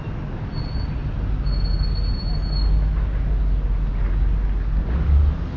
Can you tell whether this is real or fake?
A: real